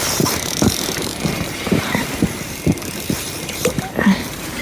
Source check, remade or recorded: remade